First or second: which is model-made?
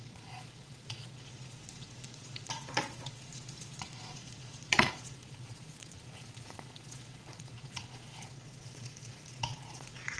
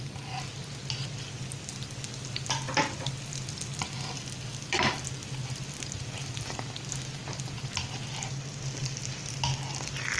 first